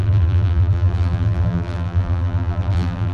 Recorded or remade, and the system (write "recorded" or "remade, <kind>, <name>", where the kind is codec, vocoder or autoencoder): remade, vocoder, BigVGAN v2